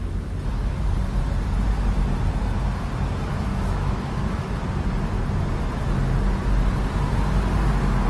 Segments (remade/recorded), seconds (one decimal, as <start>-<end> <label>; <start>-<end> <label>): 0.0-3.5 recorded; 3.5-4.5 remade; 4.5-8.1 recorded